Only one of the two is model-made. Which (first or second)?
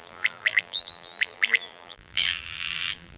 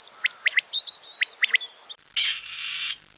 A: first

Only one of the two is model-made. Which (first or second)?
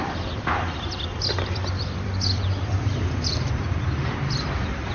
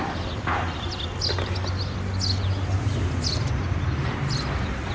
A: first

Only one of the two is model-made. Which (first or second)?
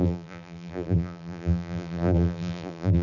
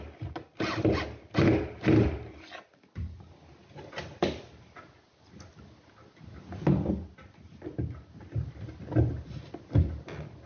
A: first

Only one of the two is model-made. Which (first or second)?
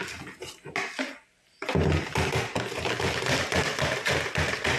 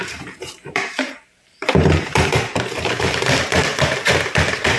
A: second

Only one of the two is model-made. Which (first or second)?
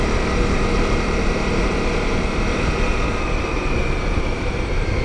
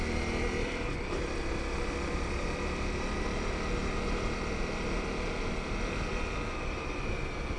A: first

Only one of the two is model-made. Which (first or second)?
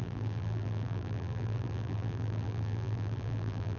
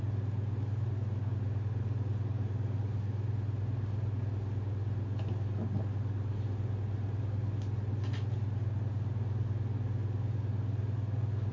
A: first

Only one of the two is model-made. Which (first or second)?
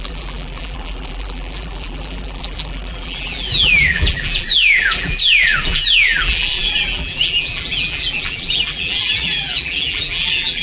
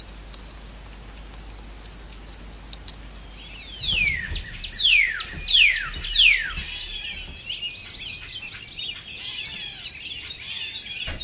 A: first